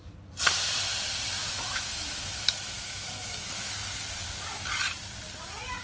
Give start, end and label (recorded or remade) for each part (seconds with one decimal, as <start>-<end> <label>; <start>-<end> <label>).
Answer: 0.0-1.4 recorded; 1.4-3.7 remade; 3.7-5.8 recorded